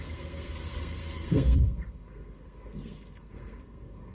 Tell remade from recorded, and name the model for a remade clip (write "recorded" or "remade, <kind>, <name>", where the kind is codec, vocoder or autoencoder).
remade, codec, SNAC